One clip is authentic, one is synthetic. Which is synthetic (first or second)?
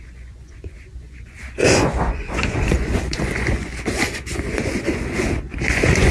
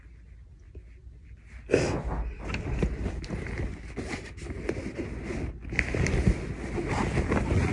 first